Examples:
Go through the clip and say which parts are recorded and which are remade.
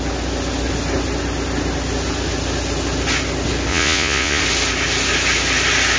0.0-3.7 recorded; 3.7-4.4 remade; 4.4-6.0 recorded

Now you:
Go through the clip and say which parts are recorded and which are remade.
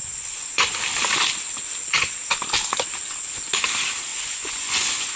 0.0-0.7 remade; 0.7-4.1 recorded; 4.1-5.2 remade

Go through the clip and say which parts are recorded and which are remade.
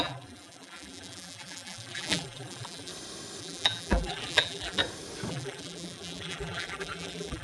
0.0-2.9 remade; 2.9-3.4 recorded; 3.4-4.8 remade; 4.8-5.3 recorded; 5.3-7.4 remade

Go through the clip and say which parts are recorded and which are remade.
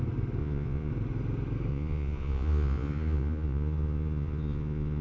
0.0-0.4 recorded; 0.4-0.9 remade; 0.9-1.7 recorded; 1.7-5.0 remade